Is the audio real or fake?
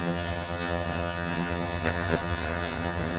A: fake